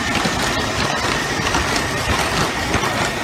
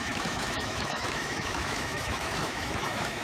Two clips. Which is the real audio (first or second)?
first